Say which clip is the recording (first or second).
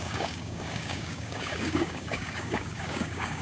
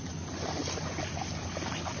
second